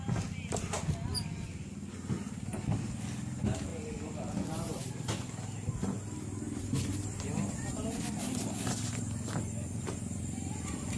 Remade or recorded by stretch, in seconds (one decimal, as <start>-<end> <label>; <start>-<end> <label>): 0.0-11.0 recorded